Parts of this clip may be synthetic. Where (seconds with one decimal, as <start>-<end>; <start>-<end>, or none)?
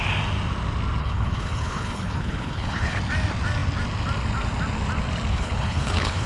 1.0-3.0; 5.3-6.3